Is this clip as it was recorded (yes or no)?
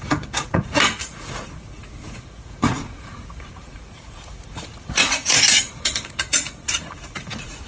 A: no